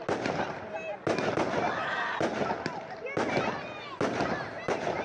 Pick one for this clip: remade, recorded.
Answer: recorded